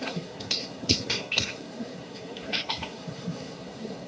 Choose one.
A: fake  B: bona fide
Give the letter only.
A